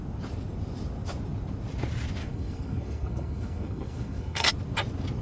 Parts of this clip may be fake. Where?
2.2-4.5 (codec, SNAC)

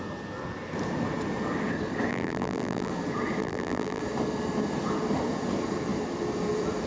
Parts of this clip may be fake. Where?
2.1-2.9 (vocoder, BigVGAN v2); 3.4-4.0